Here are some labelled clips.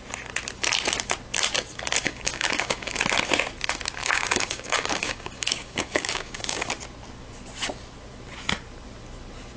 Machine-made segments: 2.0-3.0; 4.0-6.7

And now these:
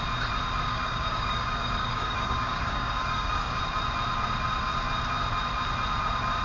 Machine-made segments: 0.7-3.6

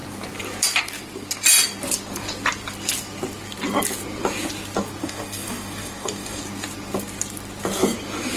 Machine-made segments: 5.0-6.4

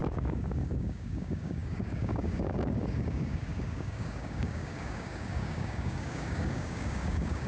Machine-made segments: 0.0-7.5

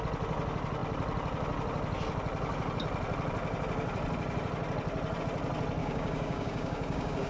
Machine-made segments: 5.8-7.3

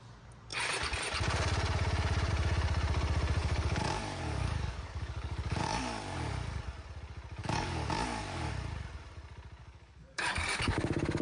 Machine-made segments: 3.4-6.6; 7.4-8.5; 9.6-11.2